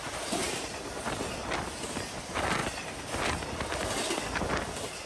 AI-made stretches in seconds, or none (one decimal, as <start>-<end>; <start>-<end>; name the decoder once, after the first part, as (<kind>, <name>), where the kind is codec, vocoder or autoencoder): none